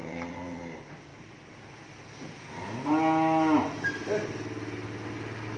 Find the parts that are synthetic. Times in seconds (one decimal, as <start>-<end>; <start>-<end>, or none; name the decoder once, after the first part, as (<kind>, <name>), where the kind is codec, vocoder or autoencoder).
0.0-0.6 (vocoder, Vocos)